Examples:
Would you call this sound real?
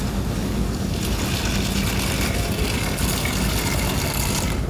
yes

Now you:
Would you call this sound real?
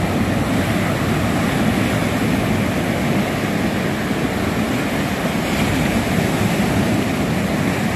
yes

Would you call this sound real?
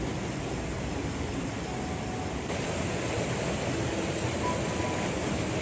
yes